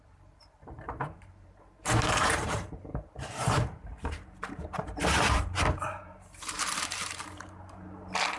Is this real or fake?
fake